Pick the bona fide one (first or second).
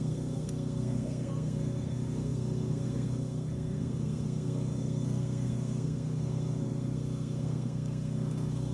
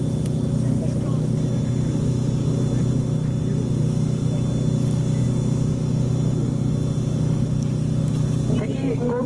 second